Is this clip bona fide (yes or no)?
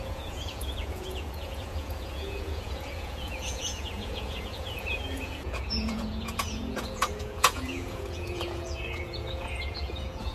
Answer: no